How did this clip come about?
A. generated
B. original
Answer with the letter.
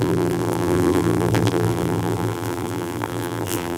A